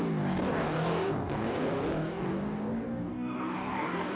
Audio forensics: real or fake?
fake